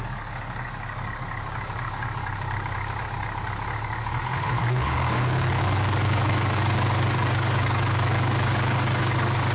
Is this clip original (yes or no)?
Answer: no